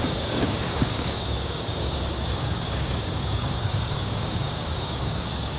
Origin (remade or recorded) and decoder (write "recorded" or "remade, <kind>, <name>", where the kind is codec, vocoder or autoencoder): remade, codec, DAC